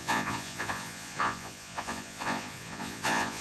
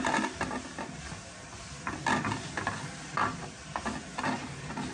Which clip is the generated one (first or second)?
first